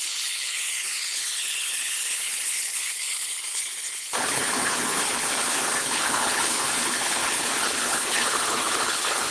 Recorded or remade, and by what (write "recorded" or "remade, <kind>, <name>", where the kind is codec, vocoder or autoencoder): remade, codec, HILCodec